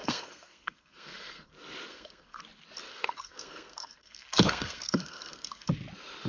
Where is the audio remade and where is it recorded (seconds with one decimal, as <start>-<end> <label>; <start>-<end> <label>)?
0.0-1.5 remade; 1.5-1.9 recorded; 1.9-2.4 remade; 2.4-2.9 recorded; 2.9-5.7 remade; 5.7-6.3 recorded